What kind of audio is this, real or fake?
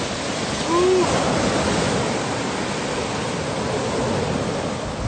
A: real